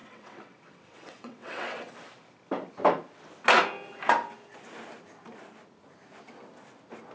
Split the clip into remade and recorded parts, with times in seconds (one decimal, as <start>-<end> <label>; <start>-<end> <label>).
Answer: 0.0-1.9 remade; 1.9-7.1 recorded